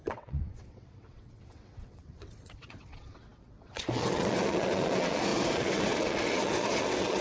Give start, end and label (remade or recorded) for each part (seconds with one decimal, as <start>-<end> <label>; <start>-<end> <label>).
0.0-7.2 remade